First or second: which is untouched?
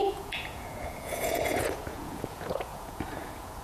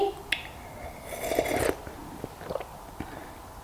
second